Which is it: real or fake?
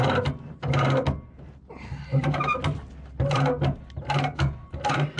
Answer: real